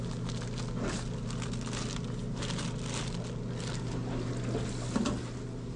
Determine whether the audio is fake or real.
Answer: real